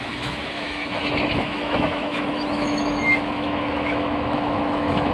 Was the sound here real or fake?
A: fake